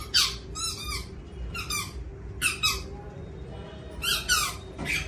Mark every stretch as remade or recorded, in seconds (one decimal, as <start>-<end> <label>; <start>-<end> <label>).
0.0-2.1 remade; 2.1-4.3 recorded; 4.3-5.1 remade